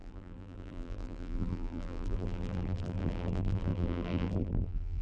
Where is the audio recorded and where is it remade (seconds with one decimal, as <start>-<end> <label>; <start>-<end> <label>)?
0.0-5.0 remade